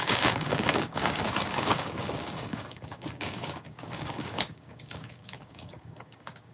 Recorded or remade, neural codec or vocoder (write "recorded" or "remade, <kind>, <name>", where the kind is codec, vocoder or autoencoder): remade, codec, DAC